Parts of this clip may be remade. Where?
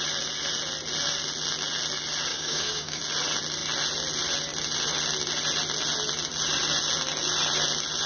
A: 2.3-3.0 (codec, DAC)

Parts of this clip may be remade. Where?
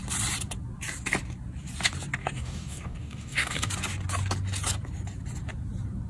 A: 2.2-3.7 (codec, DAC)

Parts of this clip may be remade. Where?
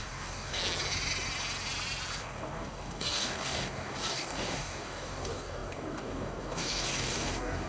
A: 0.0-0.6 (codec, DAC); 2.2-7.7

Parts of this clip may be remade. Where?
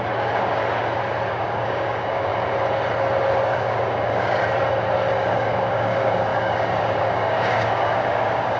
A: 0.0-0.6 (codec, DAC); 1.3-2.3; 3.4-4.4; 5.1-8.6